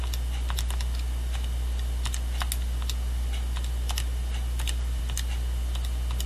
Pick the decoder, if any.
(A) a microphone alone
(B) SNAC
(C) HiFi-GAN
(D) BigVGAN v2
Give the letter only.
A